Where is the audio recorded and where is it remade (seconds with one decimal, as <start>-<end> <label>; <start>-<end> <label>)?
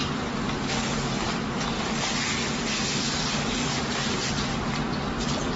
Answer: 0.0-5.6 recorded